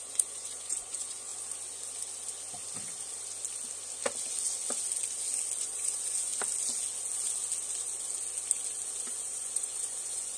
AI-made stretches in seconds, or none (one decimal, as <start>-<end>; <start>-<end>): 0.0-1.3; 5.6-6.3; 9.1-10.4